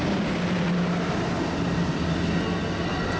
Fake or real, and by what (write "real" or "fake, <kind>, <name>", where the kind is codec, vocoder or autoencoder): real